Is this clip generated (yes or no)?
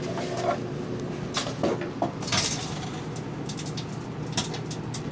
no